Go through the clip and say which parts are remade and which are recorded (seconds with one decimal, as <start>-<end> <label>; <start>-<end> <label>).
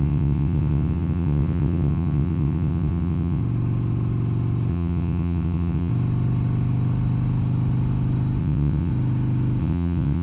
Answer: 0.0-3.4 remade; 3.4-4.7 recorded; 4.7-5.9 remade; 5.9-8.4 recorded; 8.4-8.9 remade; 8.9-9.6 recorded; 9.6-10.2 remade